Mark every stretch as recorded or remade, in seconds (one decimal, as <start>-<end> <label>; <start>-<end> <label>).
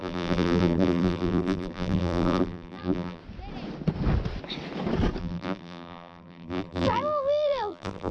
0.0-3.2 remade; 3.2-5.2 recorded; 5.2-8.1 remade